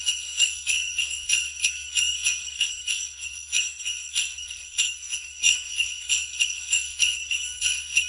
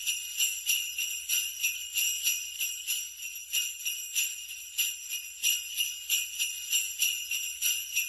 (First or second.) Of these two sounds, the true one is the second